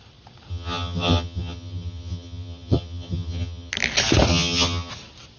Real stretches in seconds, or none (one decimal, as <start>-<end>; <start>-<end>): 0.0-0.5; 3.7-4.3; 4.9-5.4